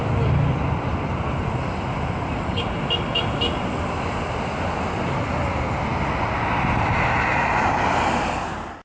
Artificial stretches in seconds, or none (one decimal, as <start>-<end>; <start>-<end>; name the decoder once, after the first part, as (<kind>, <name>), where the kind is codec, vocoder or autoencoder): 0.0-3.6 (vocoder, BigVGAN v2)